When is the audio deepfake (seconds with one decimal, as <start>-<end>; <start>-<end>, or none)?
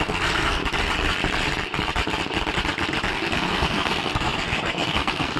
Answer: 0.0-0.6; 3.1-5.4